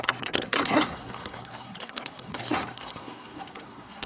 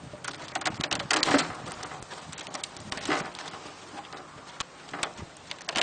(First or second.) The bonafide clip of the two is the second